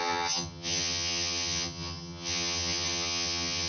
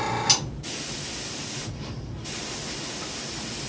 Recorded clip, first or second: second